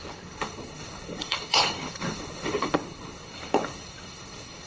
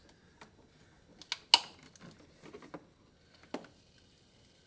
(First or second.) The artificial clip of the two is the first